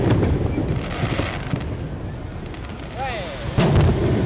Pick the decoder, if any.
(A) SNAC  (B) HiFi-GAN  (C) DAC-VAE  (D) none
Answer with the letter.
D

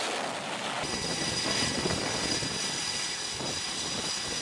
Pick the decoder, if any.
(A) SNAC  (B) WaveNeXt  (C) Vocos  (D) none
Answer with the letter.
D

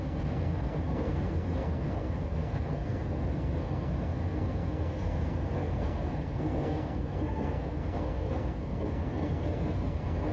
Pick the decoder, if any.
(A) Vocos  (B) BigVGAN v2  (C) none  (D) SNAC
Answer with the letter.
D